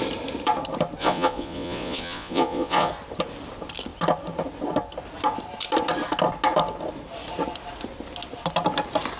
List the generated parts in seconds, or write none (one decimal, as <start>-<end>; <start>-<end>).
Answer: 1.0-2.9